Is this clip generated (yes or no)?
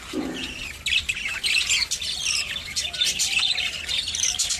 no